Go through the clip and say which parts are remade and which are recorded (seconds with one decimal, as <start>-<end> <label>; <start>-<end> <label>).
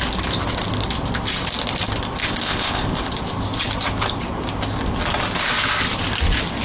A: 0.0-2.2 recorded; 2.2-3.0 remade; 3.0-6.6 recorded